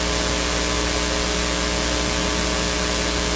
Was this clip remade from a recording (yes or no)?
no